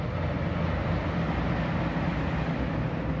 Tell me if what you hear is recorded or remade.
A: recorded